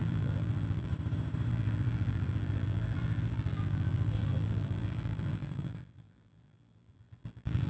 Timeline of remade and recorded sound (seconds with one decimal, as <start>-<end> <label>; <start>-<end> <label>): 0.0-0.9 remade; 0.9-1.5 recorded; 1.5-7.7 remade